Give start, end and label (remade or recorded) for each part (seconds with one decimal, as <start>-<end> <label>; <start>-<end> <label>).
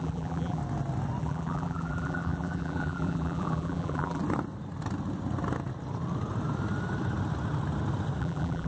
0.0-0.6 remade; 0.6-1.2 recorded; 1.2-4.2 remade; 4.2-8.2 recorded; 8.2-8.7 remade